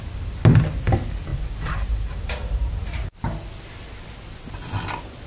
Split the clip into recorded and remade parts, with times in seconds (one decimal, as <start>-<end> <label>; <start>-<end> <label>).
0.0-1.3 recorded; 1.3-3.2 remade; 3.2-5.3 recorded